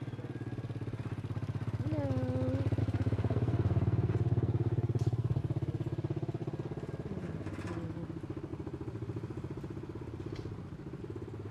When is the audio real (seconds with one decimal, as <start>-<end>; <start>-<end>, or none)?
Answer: 0.0-2.8; 5.4-11.5